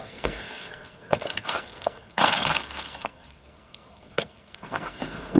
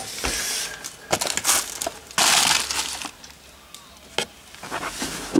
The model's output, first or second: first